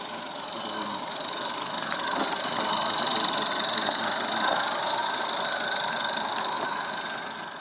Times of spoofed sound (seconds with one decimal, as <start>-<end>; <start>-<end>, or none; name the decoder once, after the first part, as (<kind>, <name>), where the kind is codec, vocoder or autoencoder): none